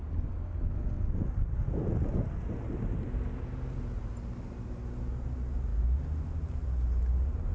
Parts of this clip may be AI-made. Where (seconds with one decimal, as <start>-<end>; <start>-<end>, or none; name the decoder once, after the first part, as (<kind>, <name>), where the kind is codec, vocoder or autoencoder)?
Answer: none